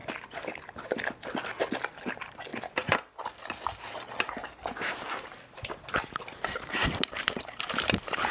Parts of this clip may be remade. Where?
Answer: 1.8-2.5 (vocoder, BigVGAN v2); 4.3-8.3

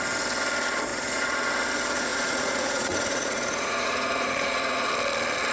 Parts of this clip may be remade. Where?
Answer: 0.9-1.5 (vocoder, Vocos); 2.1-4.9

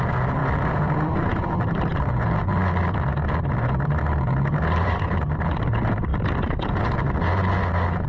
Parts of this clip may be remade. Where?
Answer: 0.4-1.9 (vocoder, BigVGAN v2); 2.4-5.6; 6.1-6.7

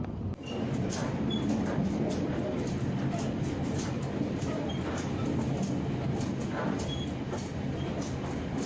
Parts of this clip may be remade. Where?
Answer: 1.0-4.7 (vocoder, BigVGAN v2)

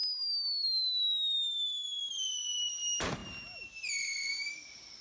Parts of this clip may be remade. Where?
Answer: 2.0-3.2 (vocoder, BigVGAN v2); 4.1-5.0

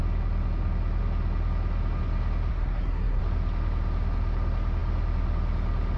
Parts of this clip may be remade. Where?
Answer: 2.5-3.2 (codec, SNAC)